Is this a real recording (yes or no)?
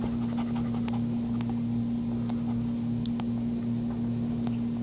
yes